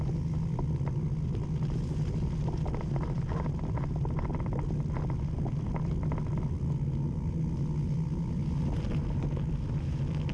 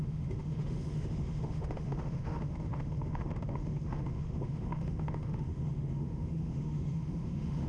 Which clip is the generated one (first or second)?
second